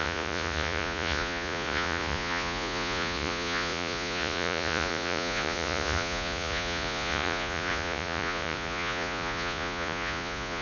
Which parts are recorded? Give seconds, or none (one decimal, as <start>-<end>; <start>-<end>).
none